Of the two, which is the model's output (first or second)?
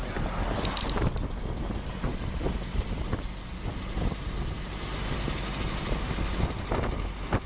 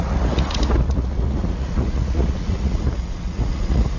second